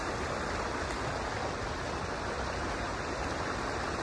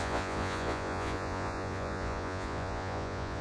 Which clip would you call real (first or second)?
first